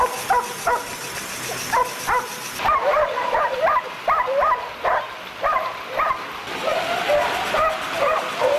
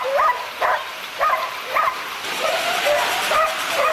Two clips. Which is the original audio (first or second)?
first